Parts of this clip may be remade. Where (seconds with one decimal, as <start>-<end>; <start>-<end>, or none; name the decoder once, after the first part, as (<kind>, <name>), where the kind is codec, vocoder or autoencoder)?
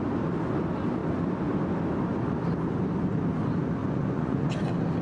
3.8-4.5 (vocoder, Vocos)